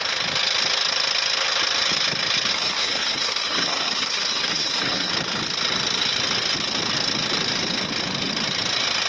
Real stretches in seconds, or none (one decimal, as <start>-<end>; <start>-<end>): 0.0-2.5; 5.1-9.1